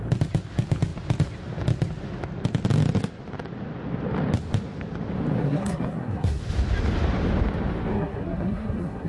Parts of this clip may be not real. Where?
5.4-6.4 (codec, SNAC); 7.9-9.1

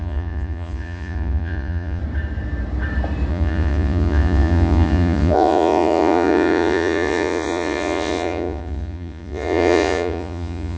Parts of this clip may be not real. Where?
0.0-2.0 (vocoder, Vocos); 3.3-10.8

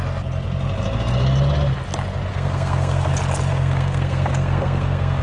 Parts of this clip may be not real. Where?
2.3-3.1 (codec, SNAC); 3.5-5.2

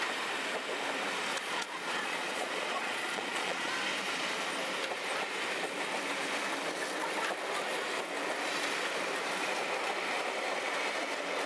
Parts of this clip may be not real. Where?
1.3-3.7 (vocoder, Vocos)

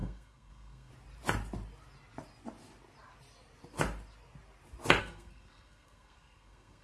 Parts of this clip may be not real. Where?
0.0-0.9 (codec, SNAC); 5.0-6.8

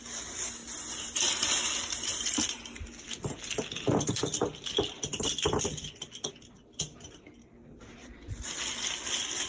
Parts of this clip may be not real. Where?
4.2-7.0 (vocoder, BigVGAN v2); 8.0-8.5